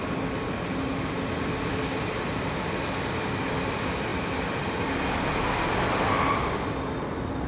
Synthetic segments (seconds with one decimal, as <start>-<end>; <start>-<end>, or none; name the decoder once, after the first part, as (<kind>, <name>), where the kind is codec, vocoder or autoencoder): none